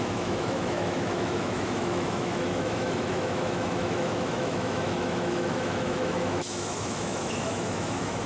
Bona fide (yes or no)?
no